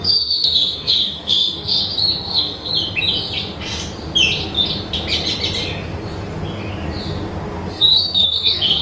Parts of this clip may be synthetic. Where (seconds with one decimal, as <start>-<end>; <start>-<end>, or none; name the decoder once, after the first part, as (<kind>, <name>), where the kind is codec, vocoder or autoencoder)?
0.0-1.8 (codec, SNAC); 2.3-2.7; 7.7-8.8